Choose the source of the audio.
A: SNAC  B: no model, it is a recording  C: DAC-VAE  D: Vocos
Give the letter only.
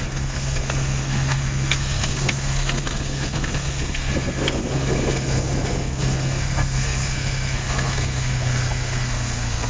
A